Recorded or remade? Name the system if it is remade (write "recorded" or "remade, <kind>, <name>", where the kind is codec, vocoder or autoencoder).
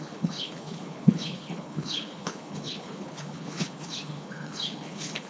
remade, codec, HILCodec